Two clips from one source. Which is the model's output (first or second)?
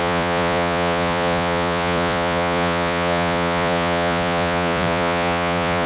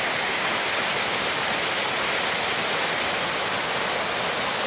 first